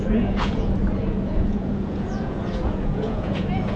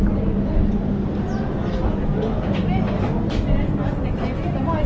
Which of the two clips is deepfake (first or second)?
first